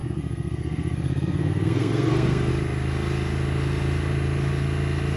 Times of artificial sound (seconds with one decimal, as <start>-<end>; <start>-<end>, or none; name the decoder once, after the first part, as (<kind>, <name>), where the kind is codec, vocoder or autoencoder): 0.0-2.5 (codec, SNAC)